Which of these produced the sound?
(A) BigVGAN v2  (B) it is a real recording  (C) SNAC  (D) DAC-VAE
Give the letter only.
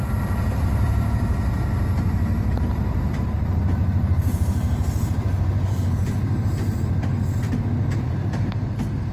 A